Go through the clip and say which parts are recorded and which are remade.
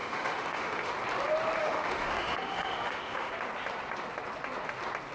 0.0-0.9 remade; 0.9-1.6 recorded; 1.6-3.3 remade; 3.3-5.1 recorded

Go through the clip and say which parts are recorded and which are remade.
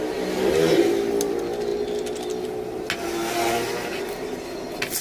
0.0-5.0 recorded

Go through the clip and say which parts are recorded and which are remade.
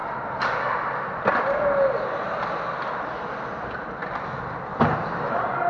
0.0-5.7 recorded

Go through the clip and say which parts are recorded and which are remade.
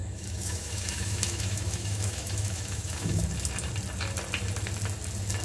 0.0-3.2 remade; 3.2-5.4 recorded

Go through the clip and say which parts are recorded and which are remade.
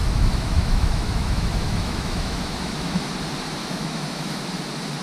0.0-3.0 remade; 3.0-3.6 recorded; 3.6-4.4 remade; 4.4-5.0 recorded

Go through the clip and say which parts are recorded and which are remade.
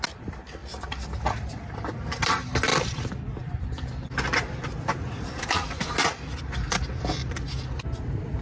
0.0-8.4 recorded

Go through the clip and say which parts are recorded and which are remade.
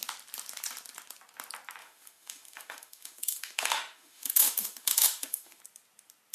0.0-1.8 recorded; 1.8-5.6 remade; 5.6-6.3 recorded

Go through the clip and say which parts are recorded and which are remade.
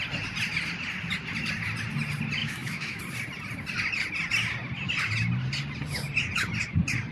0.0-2.4 recorded; 2.4-3.0 remade; 3.0-7.1 recorded